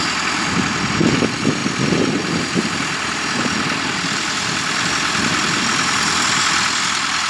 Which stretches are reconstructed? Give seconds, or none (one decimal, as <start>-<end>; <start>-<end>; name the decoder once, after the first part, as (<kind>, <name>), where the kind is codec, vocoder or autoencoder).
1.6-5.6 (vocoder, BigVGAN v2)